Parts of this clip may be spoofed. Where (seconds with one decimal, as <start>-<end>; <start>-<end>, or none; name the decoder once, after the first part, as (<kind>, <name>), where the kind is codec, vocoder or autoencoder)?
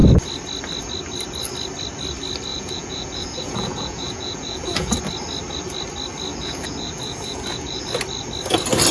2.5-5.0 (vocoder, Vocos); 6.3-7.8